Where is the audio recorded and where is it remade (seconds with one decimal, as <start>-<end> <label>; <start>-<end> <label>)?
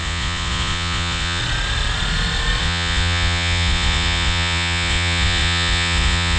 0.0-1.4 remade; 1.4-2.6 recorded; 2.6-6.4 remade